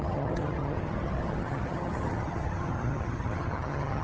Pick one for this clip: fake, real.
fake